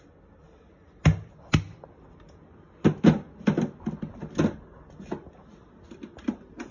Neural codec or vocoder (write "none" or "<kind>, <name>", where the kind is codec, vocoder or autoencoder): none